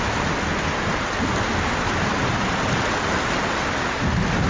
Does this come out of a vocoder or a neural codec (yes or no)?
no